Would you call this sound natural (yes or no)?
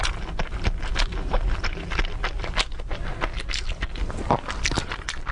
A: no